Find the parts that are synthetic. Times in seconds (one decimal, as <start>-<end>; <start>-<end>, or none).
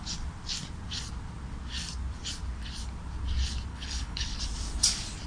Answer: 3.7-4.4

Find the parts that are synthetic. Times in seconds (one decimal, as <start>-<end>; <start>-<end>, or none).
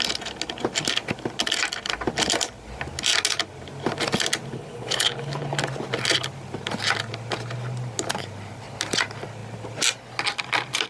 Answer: 4.5-5.5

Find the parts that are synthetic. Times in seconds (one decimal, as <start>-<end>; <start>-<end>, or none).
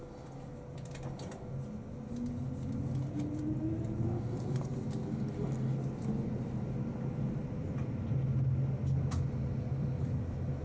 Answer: none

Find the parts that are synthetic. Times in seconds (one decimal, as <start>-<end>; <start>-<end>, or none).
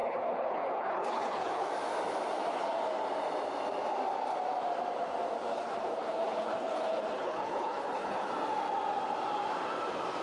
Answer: 0.0-1.7; 5.5-8.3